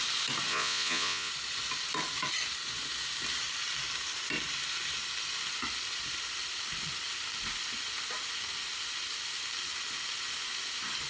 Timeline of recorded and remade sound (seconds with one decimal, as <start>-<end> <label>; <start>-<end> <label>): 0.0-0.5 recorded; 0.5-1.3 remade; 1.3-11.1 recorded